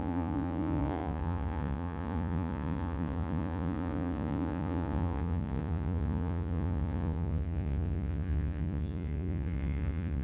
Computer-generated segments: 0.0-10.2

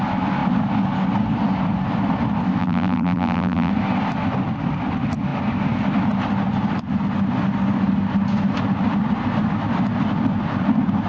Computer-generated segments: 2.6-3.7

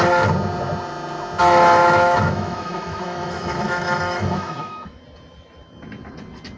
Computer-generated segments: 1.8-5.0

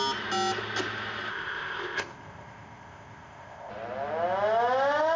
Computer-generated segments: 1.3-3.7

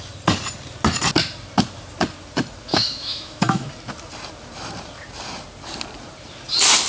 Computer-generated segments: 2.7-3.7

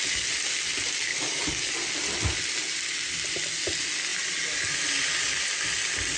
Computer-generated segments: 1.1-1.7

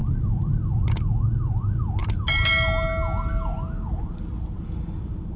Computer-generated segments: none